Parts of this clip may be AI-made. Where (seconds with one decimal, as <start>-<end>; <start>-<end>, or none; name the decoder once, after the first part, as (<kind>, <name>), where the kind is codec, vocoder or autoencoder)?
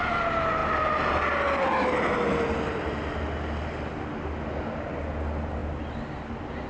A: none